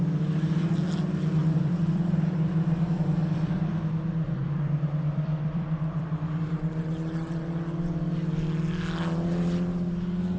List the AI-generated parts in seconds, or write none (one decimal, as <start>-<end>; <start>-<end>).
1.4-2.1; 3.2-7.4